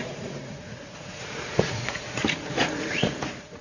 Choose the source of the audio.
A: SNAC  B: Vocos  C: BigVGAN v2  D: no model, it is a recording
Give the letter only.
B